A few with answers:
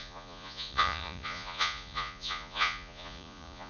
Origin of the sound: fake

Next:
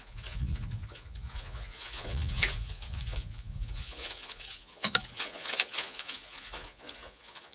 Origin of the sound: fake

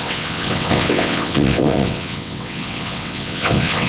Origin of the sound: fake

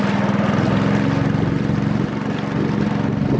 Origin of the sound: real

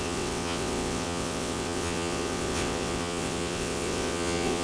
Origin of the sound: fake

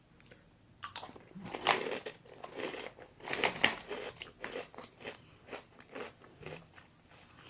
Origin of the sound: fake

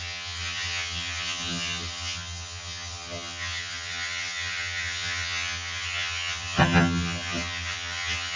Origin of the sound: fake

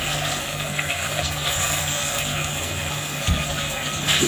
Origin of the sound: fake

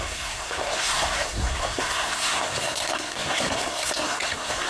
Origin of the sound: fake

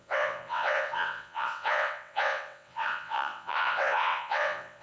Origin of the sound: fake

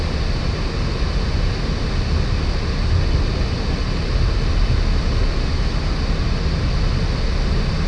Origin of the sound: real